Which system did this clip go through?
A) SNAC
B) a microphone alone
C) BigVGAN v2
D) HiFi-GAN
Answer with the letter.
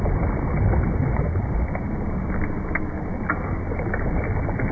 B